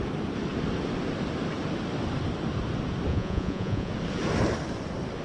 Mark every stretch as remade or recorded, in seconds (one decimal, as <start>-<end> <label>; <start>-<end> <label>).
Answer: 0.0-3.1 recorded; 3.1-3.9 remade; 3.9-5.2 recorded